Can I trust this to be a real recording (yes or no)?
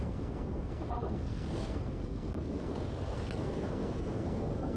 no